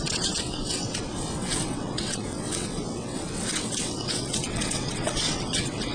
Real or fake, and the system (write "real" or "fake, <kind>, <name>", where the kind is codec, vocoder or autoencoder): fake, vocoder, WaveNeXt